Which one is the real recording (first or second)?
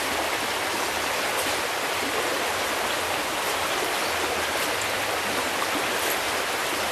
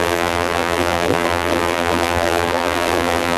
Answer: first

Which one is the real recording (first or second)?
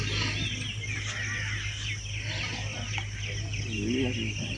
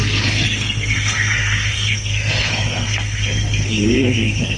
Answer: first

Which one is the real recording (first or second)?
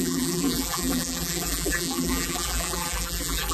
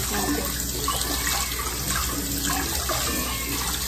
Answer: second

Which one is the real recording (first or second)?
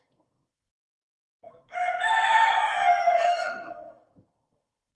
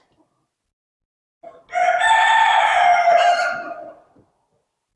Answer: second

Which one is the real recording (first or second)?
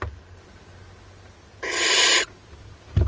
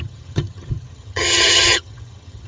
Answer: first